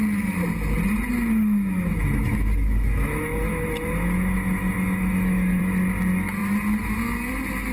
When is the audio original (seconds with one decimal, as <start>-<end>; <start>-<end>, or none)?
0.0-1.9; 5.6-7.7